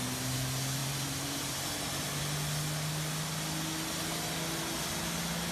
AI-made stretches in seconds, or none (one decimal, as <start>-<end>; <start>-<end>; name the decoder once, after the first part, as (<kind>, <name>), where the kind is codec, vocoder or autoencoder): 0.8-2.2 (vocoder, BigVGAN v2)

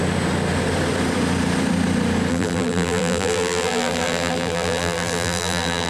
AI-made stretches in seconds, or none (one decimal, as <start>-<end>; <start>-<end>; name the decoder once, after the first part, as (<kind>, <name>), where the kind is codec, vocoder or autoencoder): 2.3-5.9 (vocoder, BigVGAN v2)

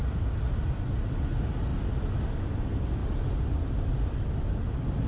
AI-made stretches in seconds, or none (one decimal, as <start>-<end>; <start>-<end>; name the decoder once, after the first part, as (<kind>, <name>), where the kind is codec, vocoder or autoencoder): 0.0-1.7 (vocoder, BigVGAN v2); 2.3-5.1

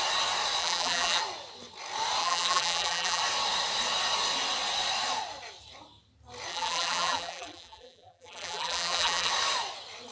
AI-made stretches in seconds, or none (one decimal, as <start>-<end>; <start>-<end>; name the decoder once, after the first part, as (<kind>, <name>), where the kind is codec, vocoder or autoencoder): 0.6-1.2 (vocoder, BigVGAN v2); 2.2-3.2; 6.5-9.3

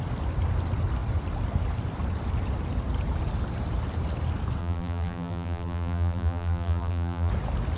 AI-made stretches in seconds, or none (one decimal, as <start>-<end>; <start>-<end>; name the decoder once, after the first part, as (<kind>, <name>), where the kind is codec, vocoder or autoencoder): 4.6-7.3 (vocoder, BigVGAN v2)

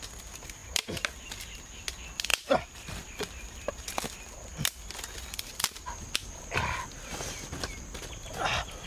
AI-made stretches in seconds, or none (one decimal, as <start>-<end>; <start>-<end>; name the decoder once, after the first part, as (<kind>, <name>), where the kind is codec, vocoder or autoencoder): 0.6-1.6 (vocoder, BigVGAN v2); 2.3-3.7

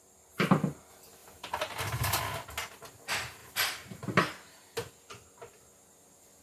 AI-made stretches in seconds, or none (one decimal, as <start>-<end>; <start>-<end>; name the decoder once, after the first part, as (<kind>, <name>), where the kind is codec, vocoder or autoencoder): 1.2-2.0 (vocoder, BigVGAN v2); 3.4-4.9